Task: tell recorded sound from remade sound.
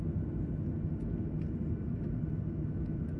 recorded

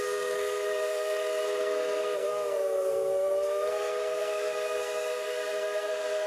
remade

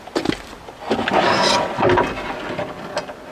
recorded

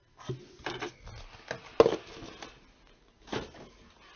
recorded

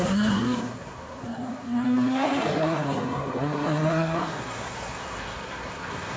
remade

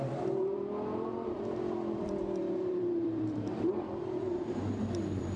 remade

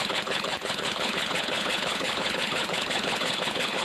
remade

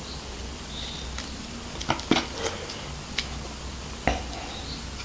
recorded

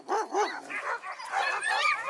remade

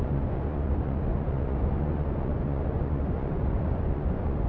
remade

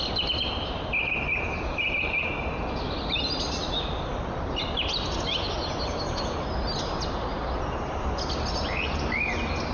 recorded